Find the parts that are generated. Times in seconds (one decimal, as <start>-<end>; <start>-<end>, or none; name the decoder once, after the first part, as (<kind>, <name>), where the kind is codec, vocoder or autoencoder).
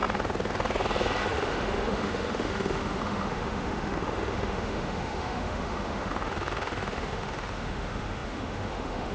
1.3-9.1 (autoencoder, DAC-VAE)